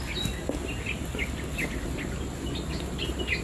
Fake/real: real